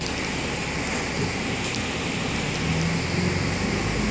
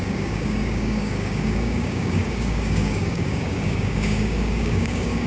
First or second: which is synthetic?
second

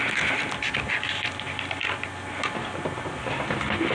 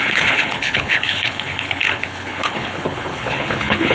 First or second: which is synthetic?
second